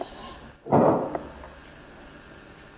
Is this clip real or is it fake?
real